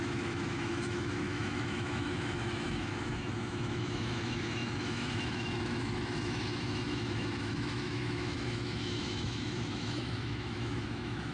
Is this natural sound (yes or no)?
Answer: no